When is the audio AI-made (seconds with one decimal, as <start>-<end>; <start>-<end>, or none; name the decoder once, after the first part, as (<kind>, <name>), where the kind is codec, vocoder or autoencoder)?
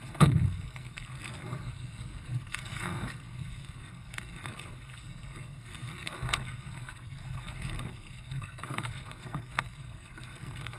0.0-10.8 (codec, SNAC)